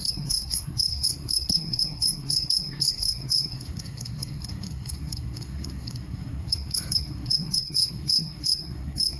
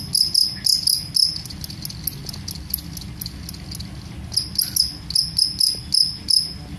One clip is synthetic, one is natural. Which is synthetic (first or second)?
first